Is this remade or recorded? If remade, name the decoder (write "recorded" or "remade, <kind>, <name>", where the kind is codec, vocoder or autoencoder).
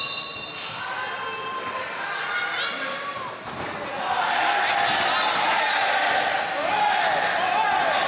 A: recorded